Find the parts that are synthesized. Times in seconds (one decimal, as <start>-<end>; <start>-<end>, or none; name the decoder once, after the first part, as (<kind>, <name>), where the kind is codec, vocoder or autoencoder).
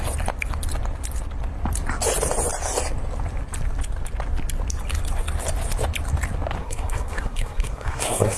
6.6-8.4 (codec, SNAC)